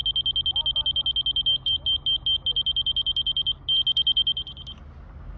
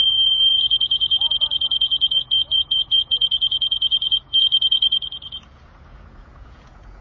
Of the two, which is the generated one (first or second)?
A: second